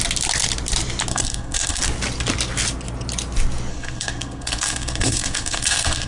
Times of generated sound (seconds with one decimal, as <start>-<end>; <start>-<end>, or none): 1.1-1.8; 3.7-6.1